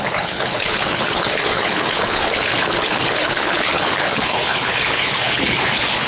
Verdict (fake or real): fake